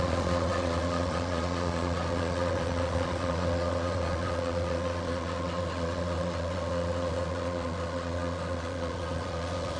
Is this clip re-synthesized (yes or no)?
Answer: yes